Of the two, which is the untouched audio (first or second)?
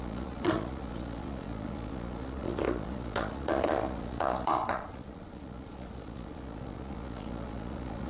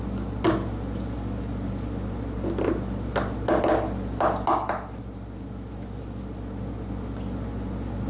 second